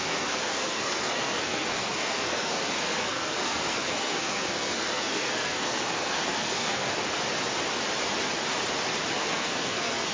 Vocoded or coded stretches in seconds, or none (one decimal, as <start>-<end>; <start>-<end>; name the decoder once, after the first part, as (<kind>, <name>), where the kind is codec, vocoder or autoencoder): 0.0-7.0 (codec, SNAC); 9.1-10.1